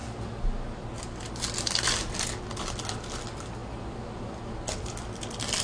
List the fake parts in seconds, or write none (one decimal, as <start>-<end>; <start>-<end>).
none